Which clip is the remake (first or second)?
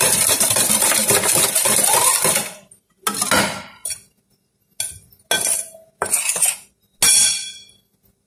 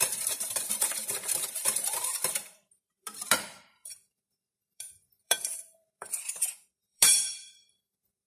second